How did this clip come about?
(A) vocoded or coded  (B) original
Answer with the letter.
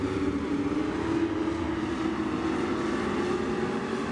B